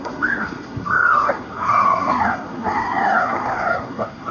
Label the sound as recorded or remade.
remade